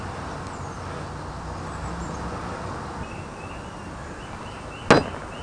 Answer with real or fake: real